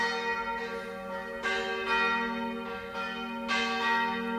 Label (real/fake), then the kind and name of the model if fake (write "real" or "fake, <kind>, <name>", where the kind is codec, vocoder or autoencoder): real